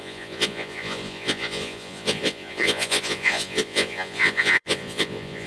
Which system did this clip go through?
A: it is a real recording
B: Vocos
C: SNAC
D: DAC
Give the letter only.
B